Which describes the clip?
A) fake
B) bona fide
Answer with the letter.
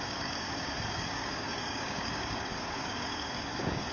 A